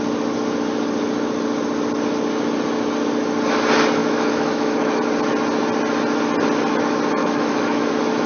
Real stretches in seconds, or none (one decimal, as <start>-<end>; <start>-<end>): 0.0-4.0; 5.0-7.2; 7.9-8.3